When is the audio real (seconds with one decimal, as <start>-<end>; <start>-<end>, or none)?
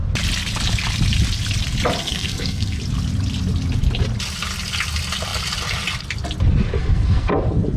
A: 0.0-2.0; 2.8-6.8; 7.3-7.8